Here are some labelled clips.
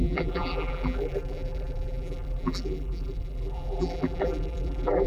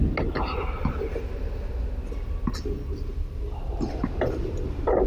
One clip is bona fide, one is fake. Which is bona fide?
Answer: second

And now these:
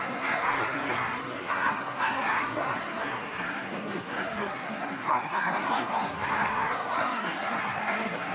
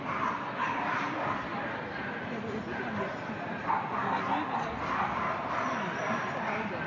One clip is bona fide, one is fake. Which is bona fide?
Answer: second